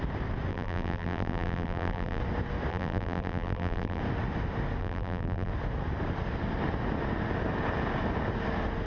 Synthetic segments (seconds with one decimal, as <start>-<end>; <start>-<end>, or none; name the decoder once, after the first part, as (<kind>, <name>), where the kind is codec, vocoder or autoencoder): 0.5-2.2 (vocoder, BigVGAN v2); 2.7-4.0; 4.8-5.5